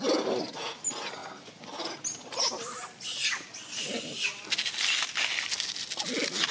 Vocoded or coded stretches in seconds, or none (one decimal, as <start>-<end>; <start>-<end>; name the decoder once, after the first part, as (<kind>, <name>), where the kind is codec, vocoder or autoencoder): none